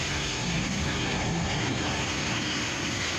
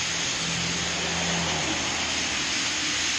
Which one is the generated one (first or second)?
first